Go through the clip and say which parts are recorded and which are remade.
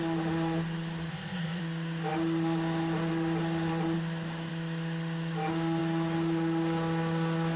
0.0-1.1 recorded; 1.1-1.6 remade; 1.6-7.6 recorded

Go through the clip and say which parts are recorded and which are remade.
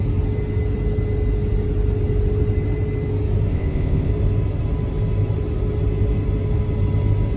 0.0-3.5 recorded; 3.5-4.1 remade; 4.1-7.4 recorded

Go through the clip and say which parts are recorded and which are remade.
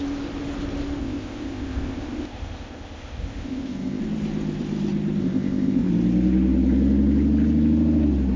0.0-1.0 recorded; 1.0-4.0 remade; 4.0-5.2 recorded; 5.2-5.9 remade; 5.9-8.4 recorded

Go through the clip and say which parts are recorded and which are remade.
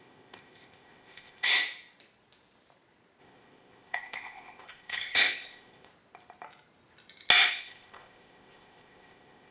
0.0-1.5 remade; 1.5-3.2 recorded; 3.2-5.9 remade; 5.9-7.5 recorded; 7.5-9.5 remade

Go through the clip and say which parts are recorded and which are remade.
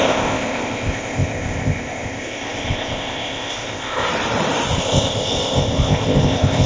0.0-4.1 remade; 4.1-4.8 recorded; 4.8-6.7 remade